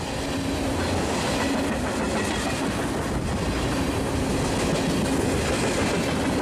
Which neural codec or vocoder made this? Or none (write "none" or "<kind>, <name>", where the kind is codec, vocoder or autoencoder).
none